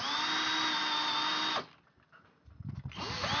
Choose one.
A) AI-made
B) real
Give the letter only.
B